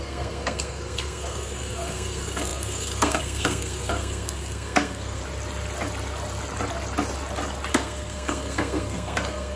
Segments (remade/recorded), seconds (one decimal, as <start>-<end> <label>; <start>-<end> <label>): 0.0-5.2 remade; 5.2-7.7 recorded; 7.7-9.6 remade